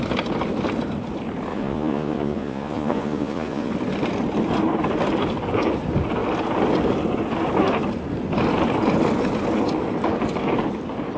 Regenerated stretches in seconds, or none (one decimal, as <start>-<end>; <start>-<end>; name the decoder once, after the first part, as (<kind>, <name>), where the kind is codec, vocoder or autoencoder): 1.5-3.7 (vocoder, Vocos)